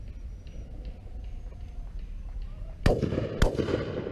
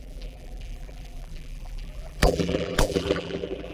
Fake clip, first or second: second